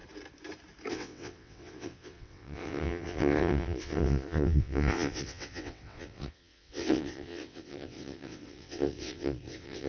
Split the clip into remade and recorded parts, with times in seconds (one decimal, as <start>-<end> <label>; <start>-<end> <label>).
0.0-0.9 recorded; 0.9-9.9 remade